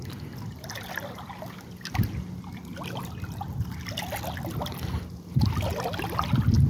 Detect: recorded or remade recorded